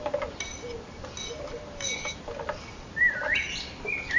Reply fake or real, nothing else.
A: real